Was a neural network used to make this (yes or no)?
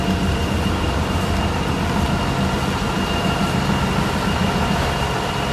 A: no